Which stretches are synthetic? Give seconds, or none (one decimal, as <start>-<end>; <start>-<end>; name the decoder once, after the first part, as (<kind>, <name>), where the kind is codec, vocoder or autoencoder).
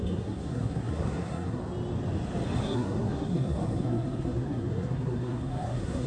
0.0-1.6 (codec, SNAC); 2.6-6.1